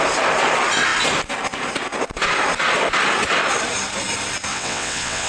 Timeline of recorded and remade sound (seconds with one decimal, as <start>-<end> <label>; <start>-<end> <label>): 0.0-4.5 recorded; 4.5-5.3 remade